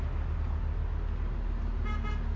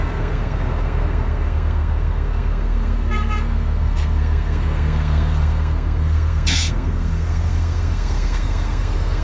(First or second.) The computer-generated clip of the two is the second